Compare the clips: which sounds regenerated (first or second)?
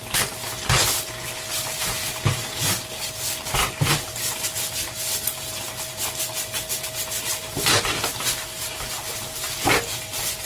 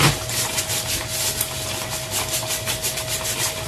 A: second